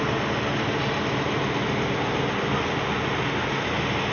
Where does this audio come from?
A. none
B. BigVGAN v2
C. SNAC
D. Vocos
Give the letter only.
A